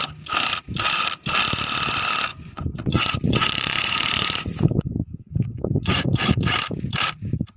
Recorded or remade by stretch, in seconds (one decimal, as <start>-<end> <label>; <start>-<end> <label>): 0.0-2.3 recorded; 2.3-6.4 remade; 6.4-7.6 recorded